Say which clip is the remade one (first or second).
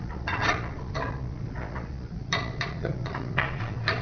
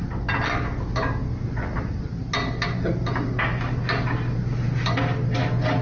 first